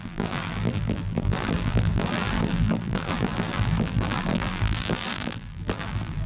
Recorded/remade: remade